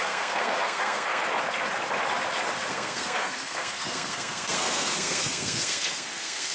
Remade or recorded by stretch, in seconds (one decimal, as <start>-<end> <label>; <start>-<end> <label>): 0.0-1.2 remade; 1.2-2.7 recorded; 2.7-6.5 remade